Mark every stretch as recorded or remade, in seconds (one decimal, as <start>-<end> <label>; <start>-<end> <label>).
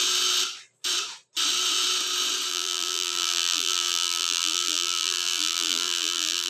0.0-2.5 recorded; 2.5-6.5 remade